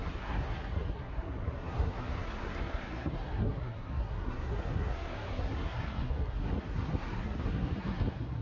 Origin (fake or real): fake